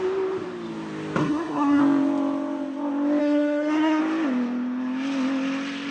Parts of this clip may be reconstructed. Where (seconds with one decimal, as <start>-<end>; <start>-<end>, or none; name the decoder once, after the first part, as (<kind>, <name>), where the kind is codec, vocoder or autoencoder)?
1.2-1.8 (codec, SNAC); 3.2-4.0